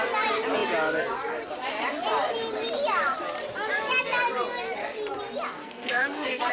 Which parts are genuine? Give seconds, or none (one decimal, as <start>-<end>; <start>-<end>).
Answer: 0.0-5.6